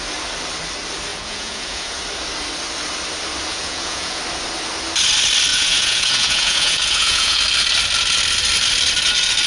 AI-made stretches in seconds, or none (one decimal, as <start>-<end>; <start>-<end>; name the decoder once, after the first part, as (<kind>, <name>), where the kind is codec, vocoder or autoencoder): 1.1-2.0 (vocoder, Vocos); 3.5-4.2; 5.5-7.4